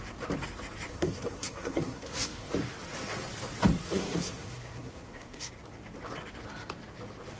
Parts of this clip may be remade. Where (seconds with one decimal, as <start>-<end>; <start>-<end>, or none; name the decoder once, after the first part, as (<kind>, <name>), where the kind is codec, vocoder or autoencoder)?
0.9-2.5 (codec, SNAC); 3.8-5.5